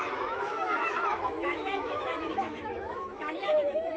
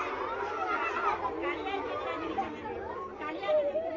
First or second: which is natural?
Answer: second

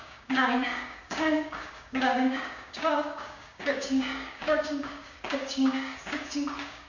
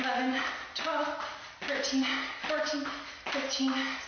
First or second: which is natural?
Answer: second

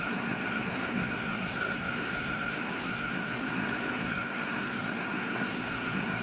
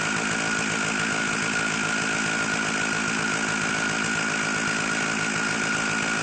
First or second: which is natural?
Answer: second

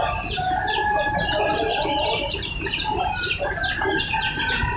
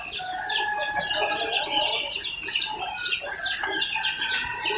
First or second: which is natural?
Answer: second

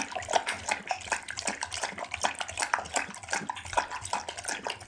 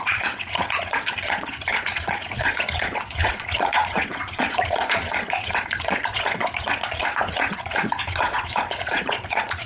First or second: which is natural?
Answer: first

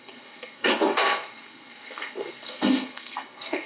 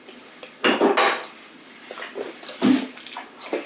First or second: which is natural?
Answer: second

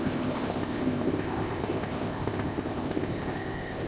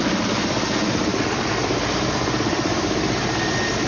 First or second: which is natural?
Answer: second